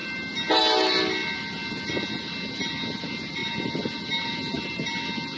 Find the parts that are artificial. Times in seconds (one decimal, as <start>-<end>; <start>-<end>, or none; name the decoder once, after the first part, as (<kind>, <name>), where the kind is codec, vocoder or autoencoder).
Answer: none

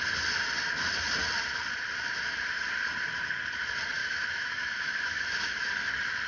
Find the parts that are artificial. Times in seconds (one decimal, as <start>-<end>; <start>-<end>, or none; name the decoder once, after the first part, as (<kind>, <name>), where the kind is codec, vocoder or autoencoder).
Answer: 4.0-5.7 (autoencoder, DAC-VAE)

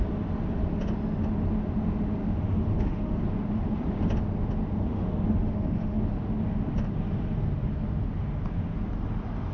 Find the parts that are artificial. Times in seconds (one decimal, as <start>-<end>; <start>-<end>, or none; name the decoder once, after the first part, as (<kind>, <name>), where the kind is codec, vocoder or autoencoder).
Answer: 2.2-3.2 (autoencoder, DAC-VAE); 4.9-6.0

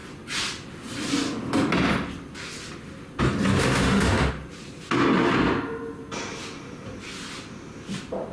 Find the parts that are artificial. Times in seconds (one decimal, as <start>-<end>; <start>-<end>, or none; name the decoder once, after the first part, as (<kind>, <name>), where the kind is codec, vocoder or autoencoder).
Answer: 3.6-4.3 (autoencoder, DAC-VAE)

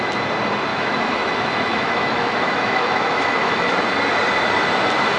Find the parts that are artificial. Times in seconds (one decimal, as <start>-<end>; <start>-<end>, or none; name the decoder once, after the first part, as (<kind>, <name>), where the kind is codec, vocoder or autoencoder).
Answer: 0.7-3.8 (autoencoder, DAC-VAE)

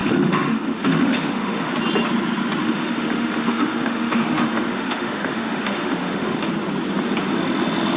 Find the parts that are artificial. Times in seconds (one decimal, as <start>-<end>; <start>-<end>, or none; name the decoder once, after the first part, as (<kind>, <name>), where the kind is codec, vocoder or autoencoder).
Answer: 0.0-1.7 (autoencoder, DAC-VAE); 2.6-6.5

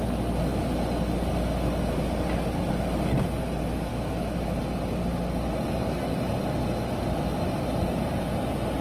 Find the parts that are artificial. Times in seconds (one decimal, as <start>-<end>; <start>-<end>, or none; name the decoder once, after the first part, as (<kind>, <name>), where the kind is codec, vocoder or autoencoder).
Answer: 3.9-4.6 (autoencoder, DAC-VAE)

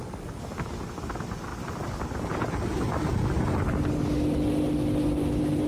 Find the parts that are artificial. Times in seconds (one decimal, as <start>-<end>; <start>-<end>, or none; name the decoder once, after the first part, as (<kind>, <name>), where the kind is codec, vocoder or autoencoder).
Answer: none